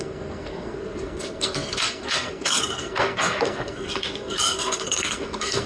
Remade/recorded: remade